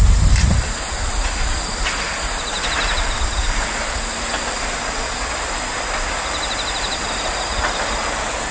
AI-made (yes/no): no